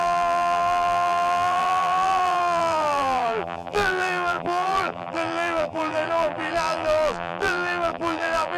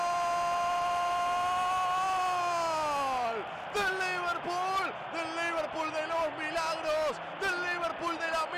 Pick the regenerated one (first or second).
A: first